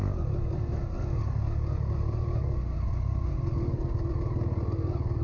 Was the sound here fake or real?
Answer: real